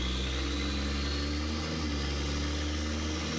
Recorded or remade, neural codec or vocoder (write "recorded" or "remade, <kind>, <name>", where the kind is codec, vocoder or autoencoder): recorded